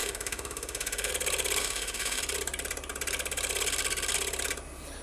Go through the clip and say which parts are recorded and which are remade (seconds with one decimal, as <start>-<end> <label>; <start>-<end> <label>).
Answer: 0.0-1.1 remade; 1.1-1.6 recorded; 1.6-2.2 remade; 2.2-5.0 recorded